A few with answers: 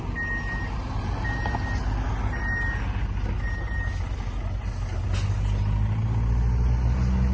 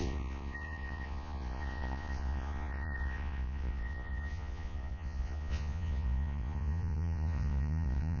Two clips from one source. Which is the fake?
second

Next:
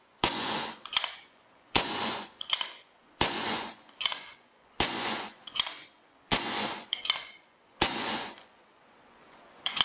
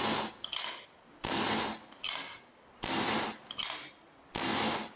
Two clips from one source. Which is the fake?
first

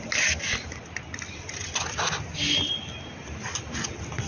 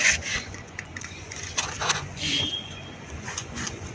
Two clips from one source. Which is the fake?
second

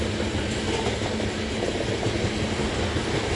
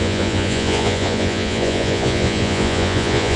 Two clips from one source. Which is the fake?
second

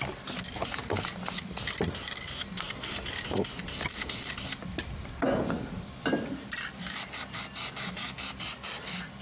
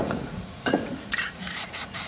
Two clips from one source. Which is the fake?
second